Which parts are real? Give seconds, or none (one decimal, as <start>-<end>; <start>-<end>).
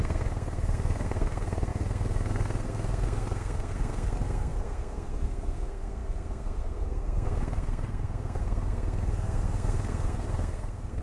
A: none